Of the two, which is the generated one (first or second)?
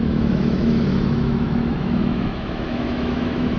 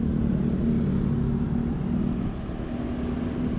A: first